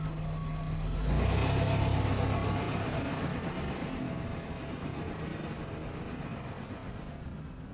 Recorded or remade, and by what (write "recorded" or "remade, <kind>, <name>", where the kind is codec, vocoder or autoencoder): recorded